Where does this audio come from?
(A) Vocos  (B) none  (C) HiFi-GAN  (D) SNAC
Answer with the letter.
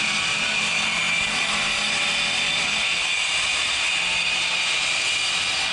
B